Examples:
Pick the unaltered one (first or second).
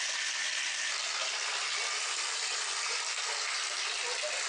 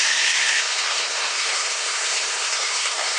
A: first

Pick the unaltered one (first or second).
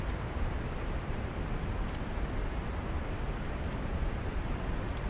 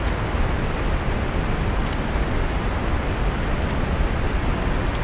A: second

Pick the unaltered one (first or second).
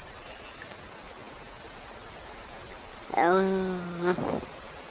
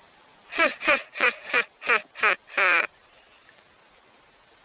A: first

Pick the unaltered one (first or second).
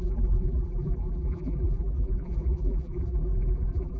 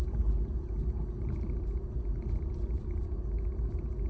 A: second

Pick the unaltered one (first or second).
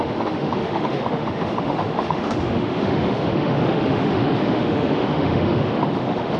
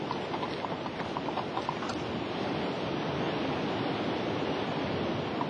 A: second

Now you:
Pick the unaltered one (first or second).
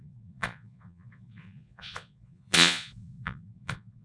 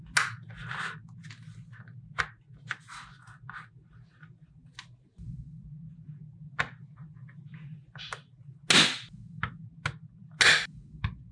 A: second